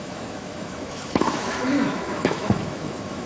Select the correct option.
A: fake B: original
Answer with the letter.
A